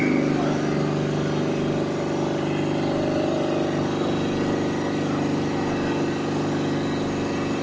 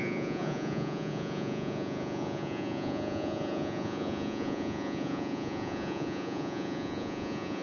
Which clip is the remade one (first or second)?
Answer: second